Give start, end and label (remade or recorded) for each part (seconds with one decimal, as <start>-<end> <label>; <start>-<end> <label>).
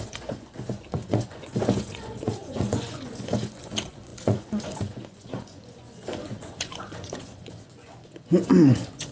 0.0-9.1 remade